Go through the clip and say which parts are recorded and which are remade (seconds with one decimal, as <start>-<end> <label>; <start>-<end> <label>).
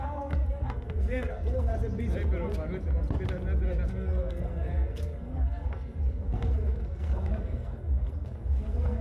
0.0-1.7 remade; 1.7-3.9 recorded; 3.9-9.0 remade